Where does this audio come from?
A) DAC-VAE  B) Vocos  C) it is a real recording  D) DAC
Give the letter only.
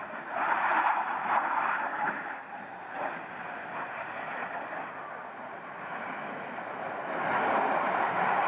C